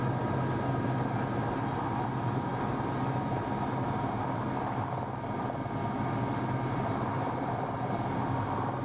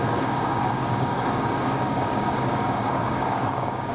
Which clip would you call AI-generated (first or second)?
second